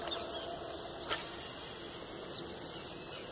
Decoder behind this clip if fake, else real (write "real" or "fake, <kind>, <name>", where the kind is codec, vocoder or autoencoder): real